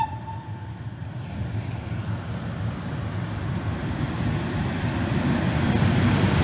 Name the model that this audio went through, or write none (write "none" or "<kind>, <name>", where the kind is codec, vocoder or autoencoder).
vocoder, BigVGAN v2